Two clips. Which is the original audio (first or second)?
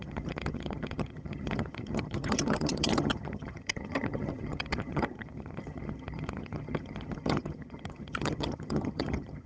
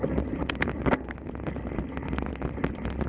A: second